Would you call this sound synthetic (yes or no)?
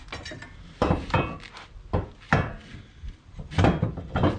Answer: no